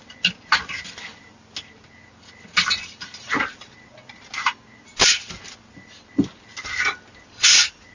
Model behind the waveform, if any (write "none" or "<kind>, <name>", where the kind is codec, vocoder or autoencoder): none